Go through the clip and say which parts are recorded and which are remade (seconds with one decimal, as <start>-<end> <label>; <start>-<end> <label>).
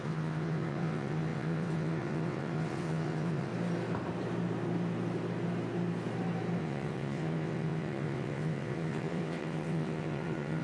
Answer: 0.0-3.5 remade; 3.5-6.6 recorded; 6.6-10.6 remade